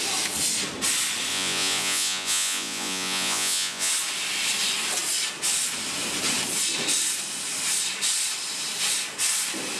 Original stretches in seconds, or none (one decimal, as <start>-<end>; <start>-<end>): 0.0-1.3; 3.9-9.8